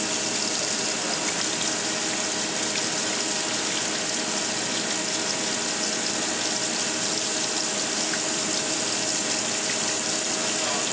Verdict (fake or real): real